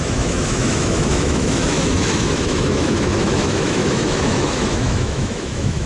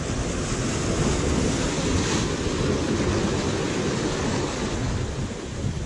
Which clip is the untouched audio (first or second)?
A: second